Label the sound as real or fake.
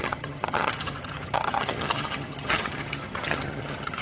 fake